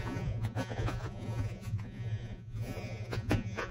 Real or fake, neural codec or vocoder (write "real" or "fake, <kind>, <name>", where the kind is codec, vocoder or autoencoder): fake, vocoder, Vocos